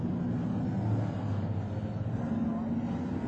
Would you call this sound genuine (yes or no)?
yes